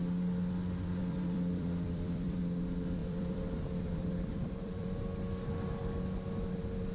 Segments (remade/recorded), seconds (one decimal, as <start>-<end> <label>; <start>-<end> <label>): 0.0-1.0 recorded; 1.0-2.4 remade; 2.4-3.0 recorded; 3.0-5.0 remade; 5.0-6.9 recorded